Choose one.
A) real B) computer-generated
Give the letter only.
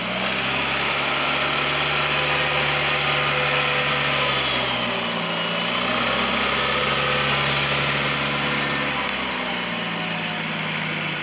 A